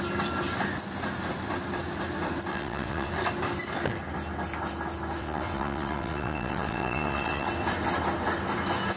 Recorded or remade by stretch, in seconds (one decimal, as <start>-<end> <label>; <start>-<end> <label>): 0.0-2.5 recorded; 2.5-3.1 remade; 3.1-5.2 recorded; 5.2-7.5 remade; 7.5-9.0 recorded